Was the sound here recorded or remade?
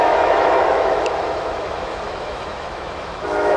remade